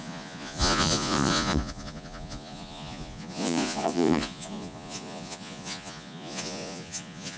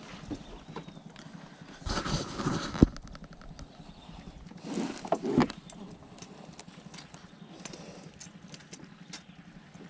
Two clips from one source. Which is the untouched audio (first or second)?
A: second